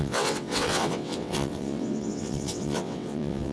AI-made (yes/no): yes